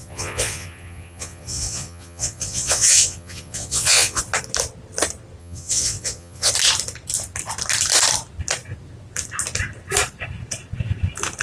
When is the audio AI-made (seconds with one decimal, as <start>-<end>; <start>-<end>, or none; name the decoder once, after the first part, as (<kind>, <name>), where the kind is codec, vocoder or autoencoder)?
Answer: 0.0-4.2 (vocoder, Vocos); 5.4-6.5